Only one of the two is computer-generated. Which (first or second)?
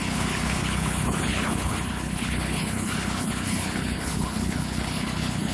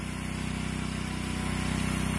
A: first